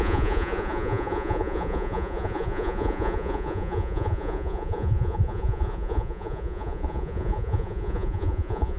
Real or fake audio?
fake